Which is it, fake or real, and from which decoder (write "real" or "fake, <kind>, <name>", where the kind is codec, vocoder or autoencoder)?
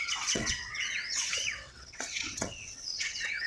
fake, vocoder, WaveNeXt